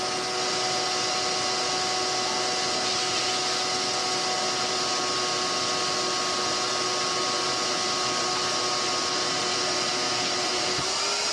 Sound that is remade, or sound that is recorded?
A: recorded